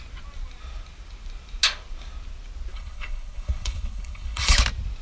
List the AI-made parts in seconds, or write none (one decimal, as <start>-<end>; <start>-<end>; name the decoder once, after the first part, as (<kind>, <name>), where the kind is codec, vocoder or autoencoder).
2.7-4.6 (codec, HILCodec)